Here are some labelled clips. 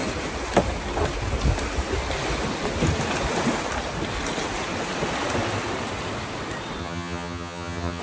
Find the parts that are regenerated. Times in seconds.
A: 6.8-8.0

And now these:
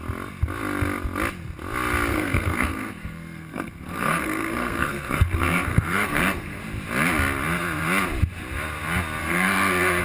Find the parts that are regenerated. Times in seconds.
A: 2.1-6.6; 9.2-10.0

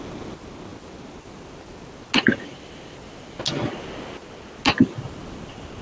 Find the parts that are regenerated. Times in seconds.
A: none